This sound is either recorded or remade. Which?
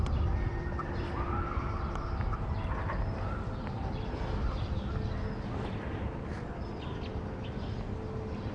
recorded